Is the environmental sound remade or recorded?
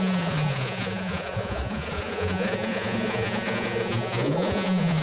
remade